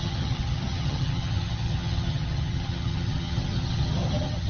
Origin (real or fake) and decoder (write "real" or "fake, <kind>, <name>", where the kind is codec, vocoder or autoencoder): fake, vocoder, HiFi-GAN